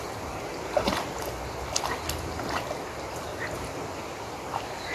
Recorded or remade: recorded